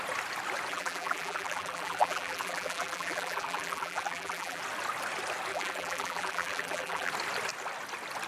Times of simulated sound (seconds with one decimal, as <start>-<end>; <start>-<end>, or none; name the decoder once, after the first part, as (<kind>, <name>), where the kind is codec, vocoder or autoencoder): 0.7-4.6 (vocoder, BigVGAN v2); 5.5-7.1